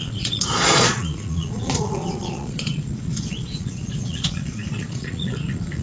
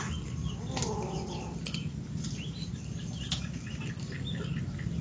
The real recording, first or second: second